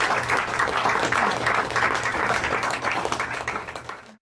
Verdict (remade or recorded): remade